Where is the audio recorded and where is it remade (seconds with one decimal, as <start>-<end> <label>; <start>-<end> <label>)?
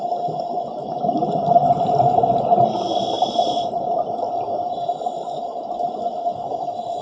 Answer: 0.0-7.0 recorded